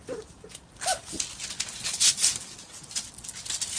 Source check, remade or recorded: recorded